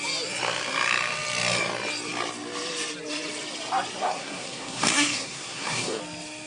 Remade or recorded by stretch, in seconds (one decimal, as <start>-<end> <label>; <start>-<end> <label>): 0.0-4.0 recorded; 4.0-6.0 remade; 6.0-6.5 recorded